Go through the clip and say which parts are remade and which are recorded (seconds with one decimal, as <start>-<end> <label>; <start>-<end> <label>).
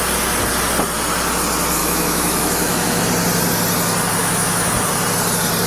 0.0-1.8 recorded; 1.8-3.0 remade; 3.0-4.2 recorded; 4.2-4.7 remade; 4.7-5.7 recorded